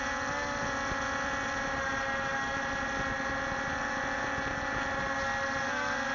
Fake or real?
real